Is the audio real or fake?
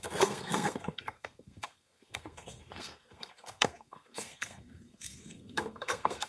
fake